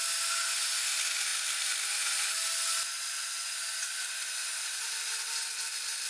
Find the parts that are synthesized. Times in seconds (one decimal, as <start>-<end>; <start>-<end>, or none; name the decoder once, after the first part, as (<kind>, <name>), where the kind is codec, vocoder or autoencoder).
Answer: none